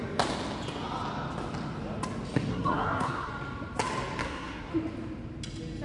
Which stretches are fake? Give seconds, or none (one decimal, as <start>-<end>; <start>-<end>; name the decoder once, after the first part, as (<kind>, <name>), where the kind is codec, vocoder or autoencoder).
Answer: 2.5-3.3 (codec, SNAC); 4.2-4.7